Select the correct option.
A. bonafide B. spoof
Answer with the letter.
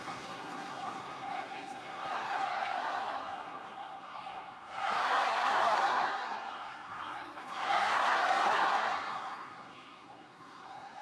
B